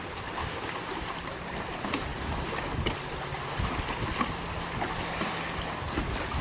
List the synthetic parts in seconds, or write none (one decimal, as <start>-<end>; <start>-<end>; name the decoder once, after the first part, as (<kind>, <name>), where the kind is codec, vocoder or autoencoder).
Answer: 0.4-0.9 (codec, DAC)